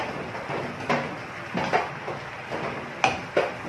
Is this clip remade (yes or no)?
no